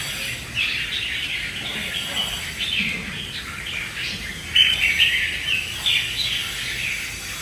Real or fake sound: real